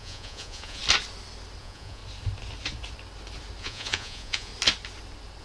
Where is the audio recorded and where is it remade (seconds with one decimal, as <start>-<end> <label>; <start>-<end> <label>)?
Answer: 0.0-0.8 remade; 0.8-1.6 recorded; 1.6-2.0 remade; 2.0-3.6 recorded; 3.6-4.5 remade; 4.5-5.4 recorded